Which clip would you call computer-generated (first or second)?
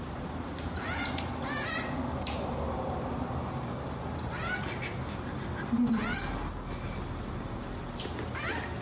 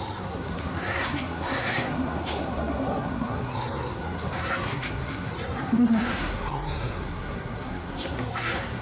second